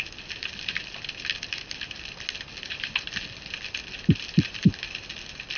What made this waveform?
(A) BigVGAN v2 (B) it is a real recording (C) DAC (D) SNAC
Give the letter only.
B